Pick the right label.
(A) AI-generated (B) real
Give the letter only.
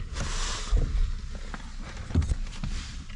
B